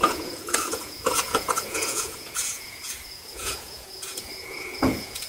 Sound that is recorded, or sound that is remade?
remade